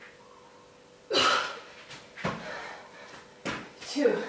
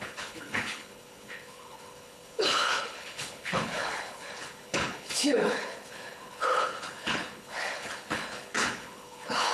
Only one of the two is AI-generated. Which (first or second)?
second